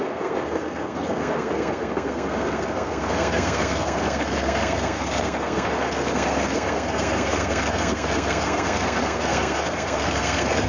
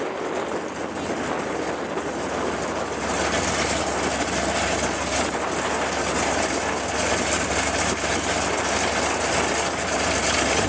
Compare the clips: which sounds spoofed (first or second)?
first